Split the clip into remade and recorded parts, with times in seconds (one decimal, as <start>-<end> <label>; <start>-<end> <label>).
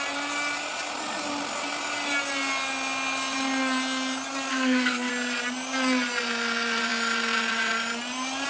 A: 0.0-4.5 recorded; 4.5-5.1 remade; 5.1-8.5 recorded